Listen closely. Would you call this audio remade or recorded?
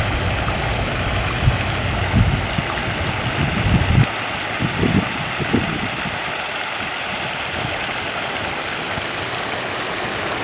recorded